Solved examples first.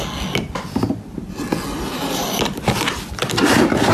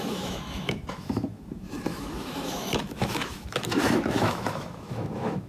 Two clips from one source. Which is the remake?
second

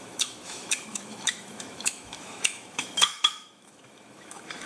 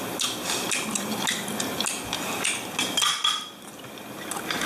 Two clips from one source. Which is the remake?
first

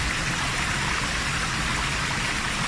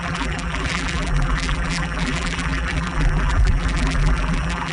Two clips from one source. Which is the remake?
second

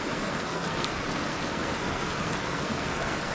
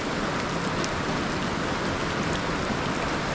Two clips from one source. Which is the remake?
first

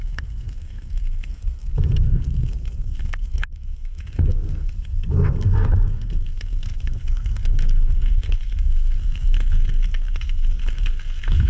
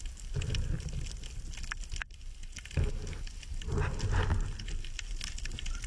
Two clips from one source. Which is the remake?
first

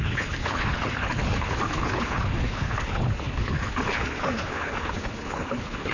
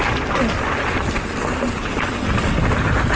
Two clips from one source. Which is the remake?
first